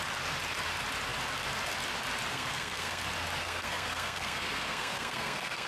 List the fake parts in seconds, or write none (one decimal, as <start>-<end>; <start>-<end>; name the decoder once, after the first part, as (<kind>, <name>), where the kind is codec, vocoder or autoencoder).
2.3-3.0 (codec, SNAC); 3.4-5.7